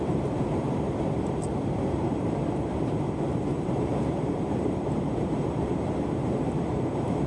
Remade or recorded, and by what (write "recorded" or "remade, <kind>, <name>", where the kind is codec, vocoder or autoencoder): remade, vocoder, BigVGAN v2